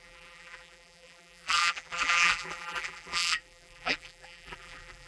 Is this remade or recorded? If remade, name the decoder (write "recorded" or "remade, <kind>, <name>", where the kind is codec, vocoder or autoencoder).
remade, vocoder, BigVGAN v2